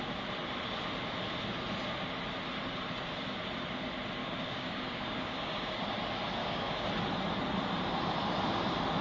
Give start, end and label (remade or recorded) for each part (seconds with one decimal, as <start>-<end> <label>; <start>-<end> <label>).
0.0-4.2 recorded; 4.2-5.8 remade; 5.8-6.4 recorded; 6.4-6.9 remade; 6.9-9.0 recorded